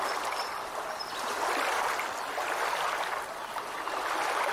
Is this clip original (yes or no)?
yes